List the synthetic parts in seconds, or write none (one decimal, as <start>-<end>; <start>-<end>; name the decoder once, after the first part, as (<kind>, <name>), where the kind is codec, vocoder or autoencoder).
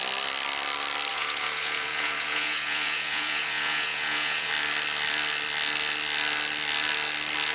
1.1-4.5 (vocoder, Vocos)